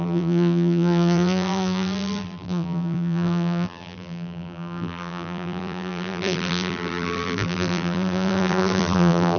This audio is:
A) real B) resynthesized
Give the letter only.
B